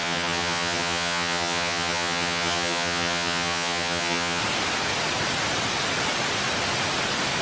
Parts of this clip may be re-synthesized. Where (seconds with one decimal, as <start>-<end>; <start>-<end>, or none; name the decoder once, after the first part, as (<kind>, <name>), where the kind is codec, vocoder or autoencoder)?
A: 0.0-4.4 (vocoder, HiFi-GAN)

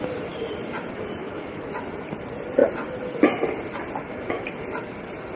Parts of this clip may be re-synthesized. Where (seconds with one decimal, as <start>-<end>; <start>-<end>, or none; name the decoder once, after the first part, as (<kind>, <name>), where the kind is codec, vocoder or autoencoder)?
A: 1.2-1.7 (autoencoder, DAC-VAE); 4.0-4.5